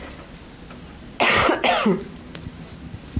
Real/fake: real